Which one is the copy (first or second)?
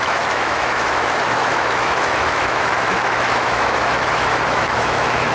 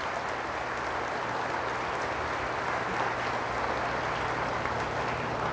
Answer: first